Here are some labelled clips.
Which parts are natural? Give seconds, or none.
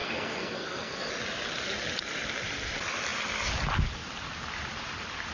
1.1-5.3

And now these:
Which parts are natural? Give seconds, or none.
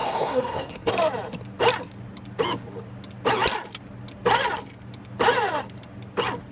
0.9-6.5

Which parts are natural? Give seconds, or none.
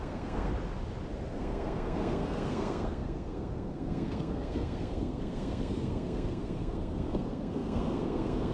0.5-1.3